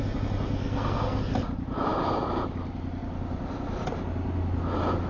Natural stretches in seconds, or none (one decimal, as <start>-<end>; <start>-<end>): 0.0-0.6; 1.2-5.1